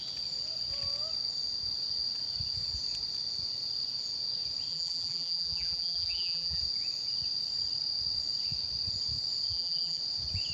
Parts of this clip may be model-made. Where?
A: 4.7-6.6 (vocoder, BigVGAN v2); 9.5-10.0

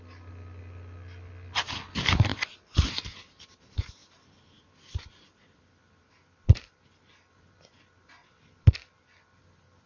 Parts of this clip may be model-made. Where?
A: none

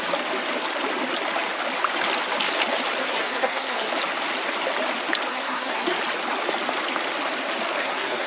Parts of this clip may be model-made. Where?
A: 3.0-3.9 (codec, SNAC); 5.3-6.0; 7.8-8.3

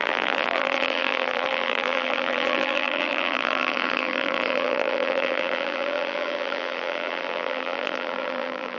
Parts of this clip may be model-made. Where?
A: 0.0-8.8 (vocoder, BigVGAN v2)